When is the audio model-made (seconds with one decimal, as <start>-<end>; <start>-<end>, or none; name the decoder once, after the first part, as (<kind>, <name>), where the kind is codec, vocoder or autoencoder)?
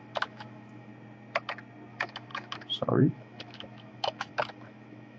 0.0-0.9 (autoencoder, DAC-VAE); 1.9-5.2